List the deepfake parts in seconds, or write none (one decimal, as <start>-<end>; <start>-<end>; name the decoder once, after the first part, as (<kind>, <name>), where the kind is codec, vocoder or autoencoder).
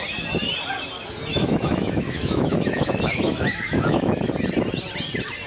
1.3-4.3 (autoencoder, DAC-VAE)